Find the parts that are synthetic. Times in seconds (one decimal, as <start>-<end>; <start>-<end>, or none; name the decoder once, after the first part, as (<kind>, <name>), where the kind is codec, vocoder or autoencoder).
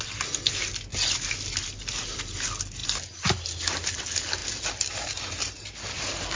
none